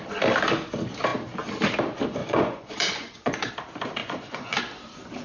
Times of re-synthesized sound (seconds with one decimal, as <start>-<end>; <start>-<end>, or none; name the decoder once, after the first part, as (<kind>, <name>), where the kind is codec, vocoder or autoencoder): 2.2-3.5 (vocoder, Vocos); 4.0-4.6

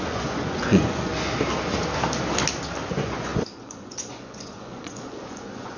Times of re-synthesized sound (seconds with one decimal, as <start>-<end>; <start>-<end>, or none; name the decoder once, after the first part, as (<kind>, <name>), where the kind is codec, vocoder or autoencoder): 0.0-1.1 (vocoder, Vocos); 2.9-5.8

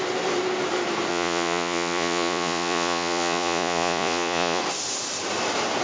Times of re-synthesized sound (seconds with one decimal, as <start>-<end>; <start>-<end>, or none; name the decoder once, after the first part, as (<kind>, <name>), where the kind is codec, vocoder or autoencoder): 1.1-4.6 (vocoder, Vocos)